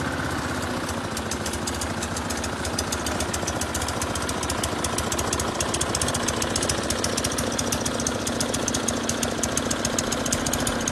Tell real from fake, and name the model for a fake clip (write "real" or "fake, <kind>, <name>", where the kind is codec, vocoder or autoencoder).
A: real